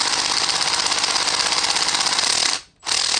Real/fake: real